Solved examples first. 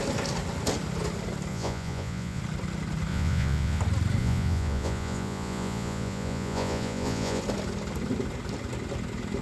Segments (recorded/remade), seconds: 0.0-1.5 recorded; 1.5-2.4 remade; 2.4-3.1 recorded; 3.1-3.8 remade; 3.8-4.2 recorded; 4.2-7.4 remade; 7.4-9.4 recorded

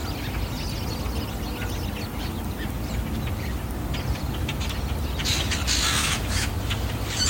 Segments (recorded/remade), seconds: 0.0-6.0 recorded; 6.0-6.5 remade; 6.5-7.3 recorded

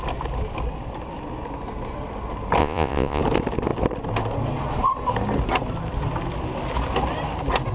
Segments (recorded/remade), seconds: 0.0-2.6 recorded; 2.6-3.2 remade; 3.2-7.7 recorded

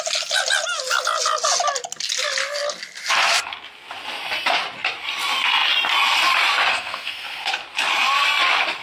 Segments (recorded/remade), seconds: 0.0-6.7 recorded; 6.7-7.5 remade; 7.5-8.8 recorded

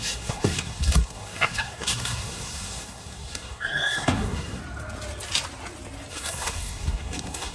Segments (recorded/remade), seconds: 0.0-4.6 remade; 4.6-6.1 recorded; 6.1-7.5 remade

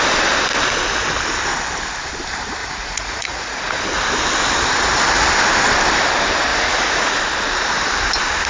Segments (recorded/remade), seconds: 0.0-2.6 recorded; 2.6-3.8 remade; 3.8-6.5 recorded; 6.5-7.2 remade; 7.2-8.5 recorded